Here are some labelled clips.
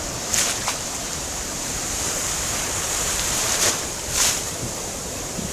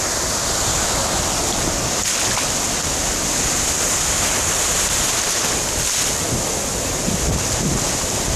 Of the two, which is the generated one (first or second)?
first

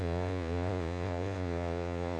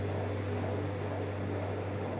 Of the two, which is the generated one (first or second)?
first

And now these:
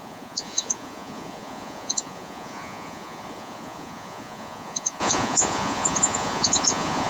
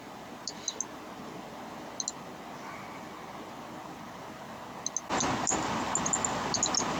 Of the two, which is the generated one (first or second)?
first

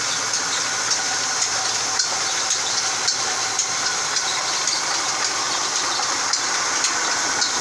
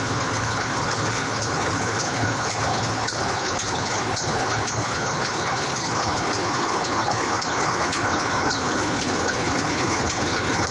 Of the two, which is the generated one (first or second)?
second